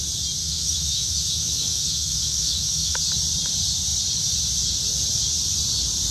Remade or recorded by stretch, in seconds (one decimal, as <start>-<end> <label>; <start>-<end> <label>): 0.0-0.4 recorded; 0.4-3.0 remade; 3.0-6.1 recorded